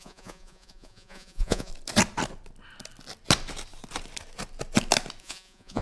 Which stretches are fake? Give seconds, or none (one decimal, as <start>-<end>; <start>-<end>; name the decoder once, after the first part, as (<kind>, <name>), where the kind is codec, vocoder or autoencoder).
0.0-1.7 (vocoder, Vocos); 5.2-5.8